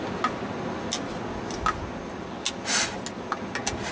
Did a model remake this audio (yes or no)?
no